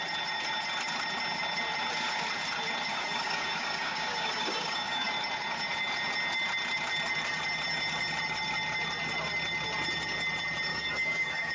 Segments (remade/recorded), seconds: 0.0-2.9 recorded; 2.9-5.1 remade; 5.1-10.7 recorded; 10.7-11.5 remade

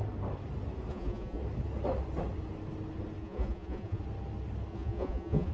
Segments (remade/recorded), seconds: 0.0-0.9 recorded; 0.9-1.4 remade; 1.4-3.2 recorded; 3.2-4.0 remade; 4.0-4.7 recorded; 4.7-5.5 remade

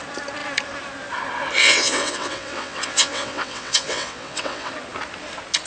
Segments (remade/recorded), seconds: 0.0-1.6 recorded; 1.6-4.7 remade; 4.7-5.7 recorded

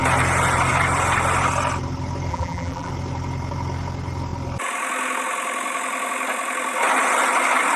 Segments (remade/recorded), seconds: 0.0-2.3 recorded; 2.3-2.9 remade; 2.9-7.8 recorded

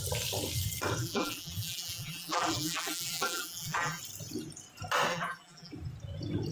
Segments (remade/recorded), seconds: 0.0-1.0 recorded; 1.0-4.0 remade; 4.0-5.1 recorded; 5.1-5.7 remade; 5.7-6.5 recorded

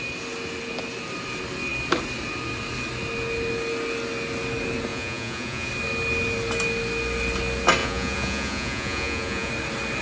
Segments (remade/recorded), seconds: 0.0-4.9 recorded; 4.9-5.7 remade; 5.7-7.8 recorded; 7.8-9.5 remade; 9.5-10.0 recorded

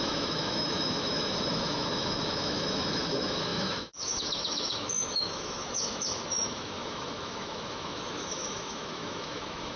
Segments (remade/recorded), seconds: 0.0-9.8 remade